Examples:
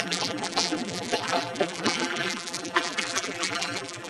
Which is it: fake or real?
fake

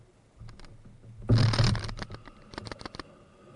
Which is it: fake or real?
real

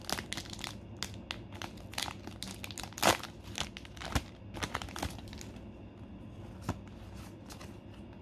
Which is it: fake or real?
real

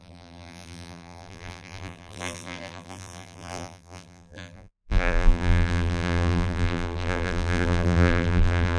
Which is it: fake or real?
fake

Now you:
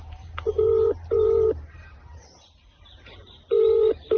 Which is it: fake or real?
fake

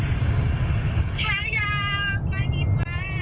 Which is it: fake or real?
real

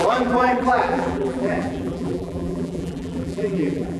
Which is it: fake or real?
fake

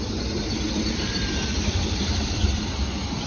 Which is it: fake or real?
fake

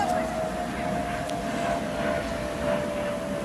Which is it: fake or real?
real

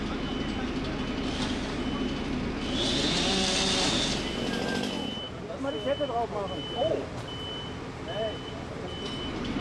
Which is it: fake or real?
real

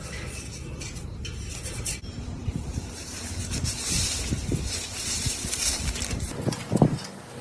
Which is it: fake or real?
real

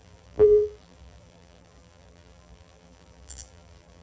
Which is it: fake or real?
fake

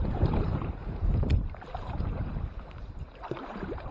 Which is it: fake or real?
fake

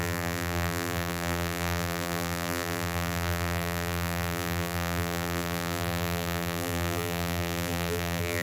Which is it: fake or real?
fake